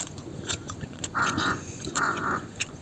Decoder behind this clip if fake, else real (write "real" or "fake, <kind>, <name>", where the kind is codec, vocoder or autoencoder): fake, vocoder, Vocos